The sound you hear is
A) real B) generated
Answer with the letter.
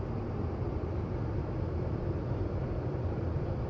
A